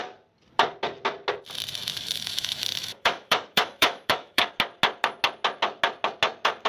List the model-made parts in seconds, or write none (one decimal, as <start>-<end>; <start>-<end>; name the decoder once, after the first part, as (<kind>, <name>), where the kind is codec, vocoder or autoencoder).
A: 1.9-4.5 (autoencoder, DAC-VAE)